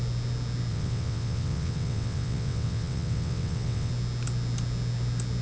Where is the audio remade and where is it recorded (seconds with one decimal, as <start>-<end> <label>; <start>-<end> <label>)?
0.0-0.7 recorded; 0.7-3.9 remade; 3.9-5.4 recorded